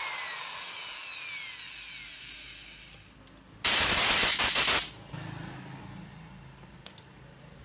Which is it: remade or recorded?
recorded